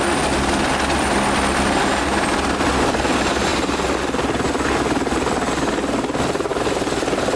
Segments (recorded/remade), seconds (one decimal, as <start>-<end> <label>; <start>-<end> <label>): 0.0-7.4 recorded